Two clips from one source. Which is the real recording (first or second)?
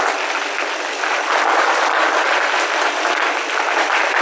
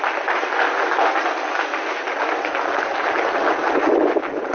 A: second